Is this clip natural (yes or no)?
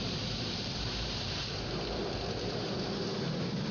no